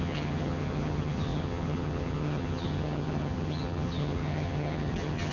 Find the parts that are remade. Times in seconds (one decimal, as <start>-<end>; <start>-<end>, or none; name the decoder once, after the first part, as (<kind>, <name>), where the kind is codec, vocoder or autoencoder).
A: 0.0-5.3 (vocoder, HiFi-GAN)